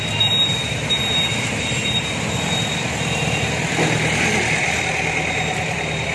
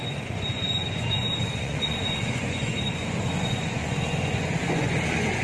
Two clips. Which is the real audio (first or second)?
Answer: first